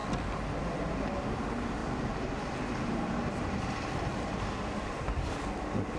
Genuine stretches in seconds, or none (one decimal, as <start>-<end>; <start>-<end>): 0.0-1.8; 5.4-6.0